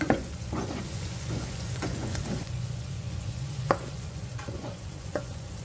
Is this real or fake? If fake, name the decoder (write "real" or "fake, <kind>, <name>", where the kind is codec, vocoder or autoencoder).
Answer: fake, vocoder, Vocos